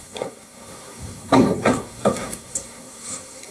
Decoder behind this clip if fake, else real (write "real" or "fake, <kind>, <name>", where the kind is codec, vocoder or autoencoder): fake, codec, SNAC